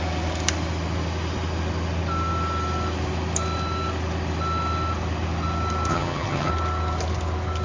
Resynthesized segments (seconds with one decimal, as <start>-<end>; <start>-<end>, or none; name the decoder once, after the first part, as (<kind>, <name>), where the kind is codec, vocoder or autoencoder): 5.9-6.5 (vocoder, HiFi-GAN)